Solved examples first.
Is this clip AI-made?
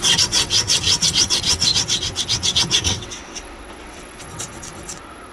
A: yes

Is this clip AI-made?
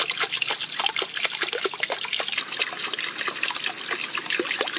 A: no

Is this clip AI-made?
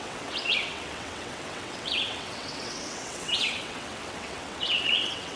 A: yes